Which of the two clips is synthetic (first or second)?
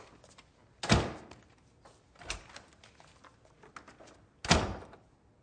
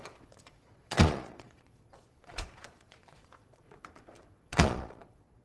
second